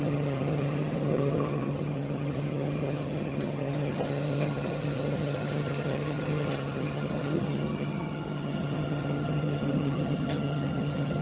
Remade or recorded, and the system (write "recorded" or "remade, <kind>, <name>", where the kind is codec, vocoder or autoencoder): remade, vocoder, HiFi-GAN